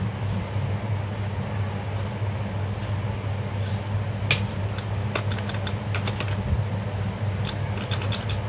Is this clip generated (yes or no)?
no